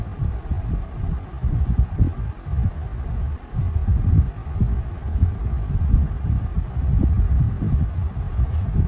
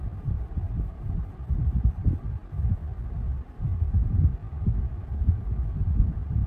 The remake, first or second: second